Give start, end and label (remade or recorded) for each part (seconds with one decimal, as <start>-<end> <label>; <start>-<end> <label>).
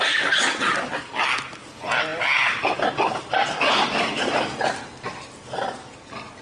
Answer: 0.0-6.4 recorded